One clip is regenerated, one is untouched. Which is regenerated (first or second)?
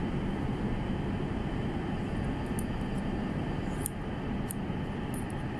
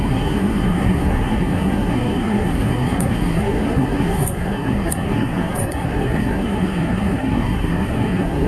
second